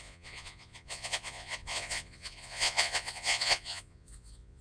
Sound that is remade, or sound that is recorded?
remade